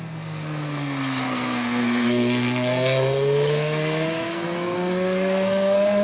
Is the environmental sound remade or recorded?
remade